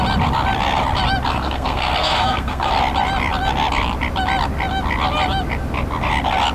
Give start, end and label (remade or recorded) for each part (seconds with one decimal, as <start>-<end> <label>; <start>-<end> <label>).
0.0-1.3 recorded; 1.3-2.7 remade; 2.7-6.5 recorded